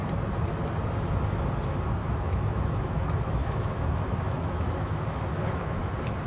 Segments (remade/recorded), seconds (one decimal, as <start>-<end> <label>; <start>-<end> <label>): 0.0-2.0 recorded; 2.0-5.8 remade; 5.8-6.3 recorded